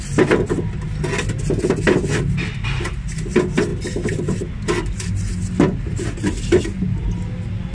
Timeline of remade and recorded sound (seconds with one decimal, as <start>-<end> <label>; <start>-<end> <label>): 0.0-7.7 recorded